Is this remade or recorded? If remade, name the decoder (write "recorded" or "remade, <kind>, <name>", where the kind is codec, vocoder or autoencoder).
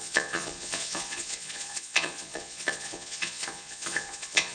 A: remade, vocoder, Vocos